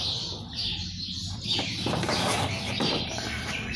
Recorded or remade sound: remade